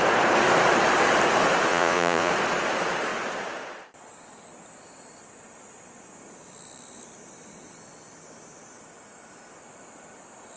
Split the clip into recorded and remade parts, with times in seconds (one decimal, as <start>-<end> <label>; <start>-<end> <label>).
0.0-1.7 recorded; 1.7-2.3 remade; 2.3-10.6 recorded